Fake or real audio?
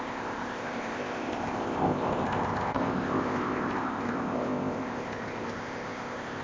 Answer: fake